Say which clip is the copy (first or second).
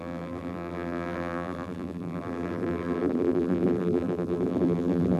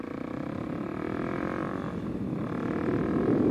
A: first